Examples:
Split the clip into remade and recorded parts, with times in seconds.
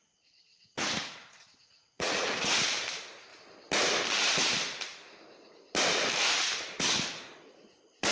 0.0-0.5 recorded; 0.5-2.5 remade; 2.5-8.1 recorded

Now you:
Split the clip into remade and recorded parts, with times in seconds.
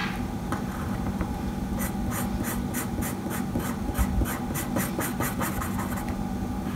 0.0-1.8 remade; 1.8-6.8 recorded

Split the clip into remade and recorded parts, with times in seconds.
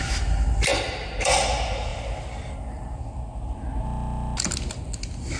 0.0-5.4 recorded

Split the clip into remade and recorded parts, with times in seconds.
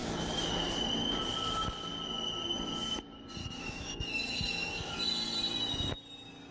0.0-3.4 recorded; 3.4-5.0 remade; 5.0-6.5 recorded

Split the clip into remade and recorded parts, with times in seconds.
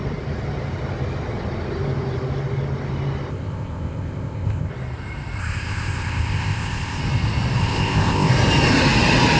0.0-3.3 recorded; 3.3-4.7 remade; 4.7-5.4 recorded; 5.4-7.0 remade; 7.0-7.6 recorded; 7.6-8.3 remade; 8.3-9.4 recorded